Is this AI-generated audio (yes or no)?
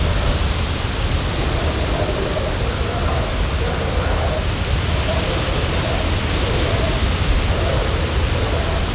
no